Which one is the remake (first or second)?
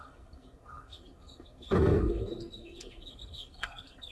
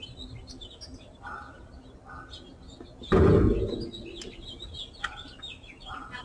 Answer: first